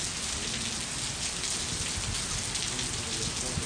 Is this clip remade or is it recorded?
recorded